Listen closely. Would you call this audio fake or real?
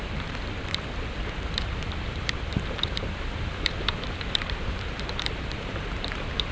fake